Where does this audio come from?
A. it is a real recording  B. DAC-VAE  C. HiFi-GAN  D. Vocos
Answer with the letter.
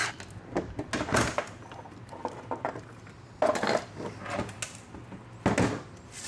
A